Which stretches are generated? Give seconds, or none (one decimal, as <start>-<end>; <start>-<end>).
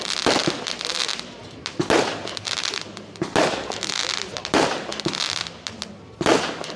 none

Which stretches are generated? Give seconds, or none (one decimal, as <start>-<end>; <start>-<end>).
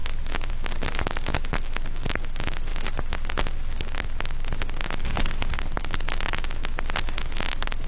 5.0-5.6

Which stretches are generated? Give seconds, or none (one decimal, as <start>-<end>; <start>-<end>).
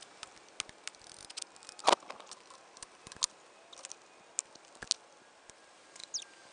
none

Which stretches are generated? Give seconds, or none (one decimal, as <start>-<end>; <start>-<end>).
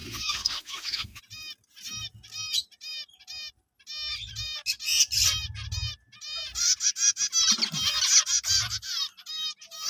0.0-1.2